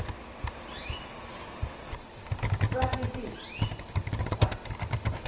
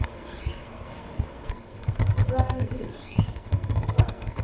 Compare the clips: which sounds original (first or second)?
first